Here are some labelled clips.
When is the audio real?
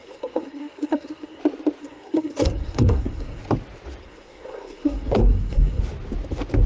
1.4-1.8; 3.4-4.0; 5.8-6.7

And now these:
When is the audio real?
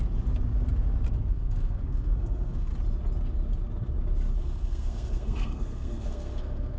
0.0-1.3; 2.7-4.4